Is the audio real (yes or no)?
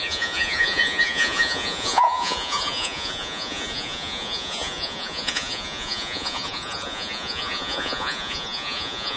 no